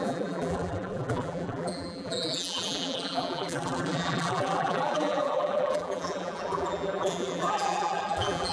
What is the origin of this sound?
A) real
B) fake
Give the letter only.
B